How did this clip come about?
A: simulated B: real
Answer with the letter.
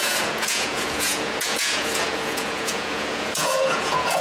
A